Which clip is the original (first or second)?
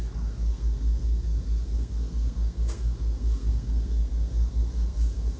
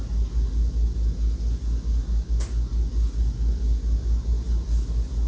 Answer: second